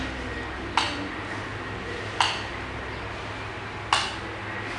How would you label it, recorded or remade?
recorded